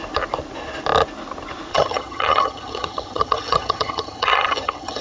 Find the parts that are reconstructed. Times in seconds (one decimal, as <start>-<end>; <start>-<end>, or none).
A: 1.7-5.0